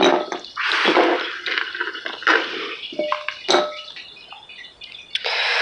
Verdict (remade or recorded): recorded